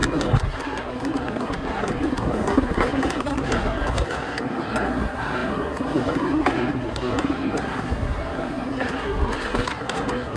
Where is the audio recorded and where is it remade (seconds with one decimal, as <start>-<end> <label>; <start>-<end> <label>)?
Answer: 0.0-10.4 remade